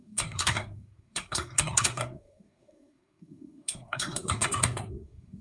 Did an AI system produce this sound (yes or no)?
yes